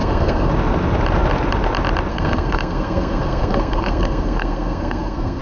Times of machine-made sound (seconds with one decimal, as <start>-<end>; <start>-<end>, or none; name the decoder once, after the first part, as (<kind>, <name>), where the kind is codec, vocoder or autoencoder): 0.0-0.5 (codec, SNAC); 2.1-5.4